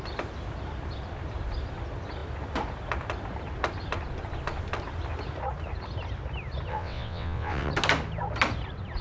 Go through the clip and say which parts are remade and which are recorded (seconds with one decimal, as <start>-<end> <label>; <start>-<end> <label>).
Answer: 0.0-6.7 recorded; 6.7-7.7 remade; 7.7-9.0 recorded